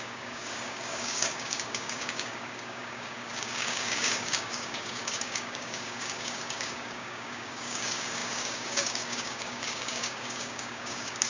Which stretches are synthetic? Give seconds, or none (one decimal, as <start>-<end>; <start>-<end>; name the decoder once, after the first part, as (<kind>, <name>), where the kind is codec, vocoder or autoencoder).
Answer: 0.0-11.3 (codec, DAC)